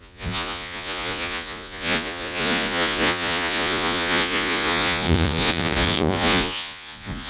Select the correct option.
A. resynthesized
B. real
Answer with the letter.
A